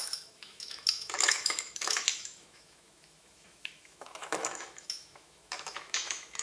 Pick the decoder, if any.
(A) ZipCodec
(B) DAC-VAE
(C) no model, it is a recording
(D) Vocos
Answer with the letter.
B